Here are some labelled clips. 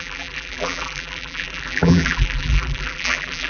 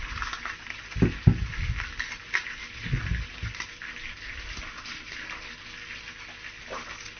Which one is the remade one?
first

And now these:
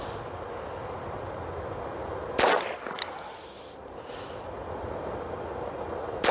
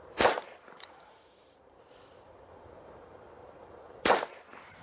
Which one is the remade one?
second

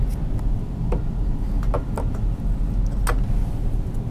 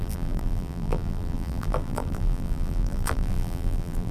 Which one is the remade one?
second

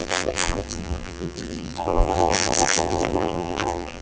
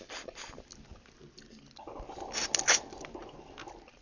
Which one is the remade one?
first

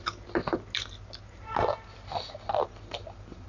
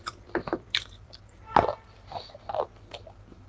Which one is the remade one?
second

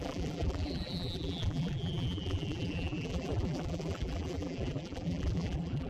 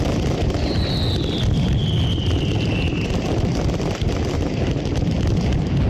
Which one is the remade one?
first